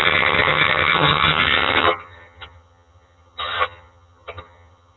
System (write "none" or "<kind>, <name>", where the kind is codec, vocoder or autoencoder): vocoder, HiFi-GAN